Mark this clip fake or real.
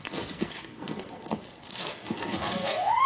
fake